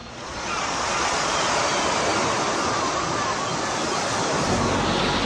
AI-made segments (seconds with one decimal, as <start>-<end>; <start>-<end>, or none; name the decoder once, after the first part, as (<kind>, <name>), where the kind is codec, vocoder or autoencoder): 0.0-1.5 (vocoder, Vocos)